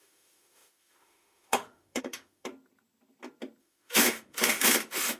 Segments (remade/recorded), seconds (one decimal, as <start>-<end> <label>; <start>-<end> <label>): 0.0-2.5 remade; 2.5-3.6 recorded; 3.6-5.2 remade